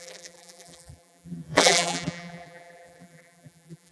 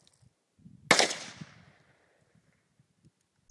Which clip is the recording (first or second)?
second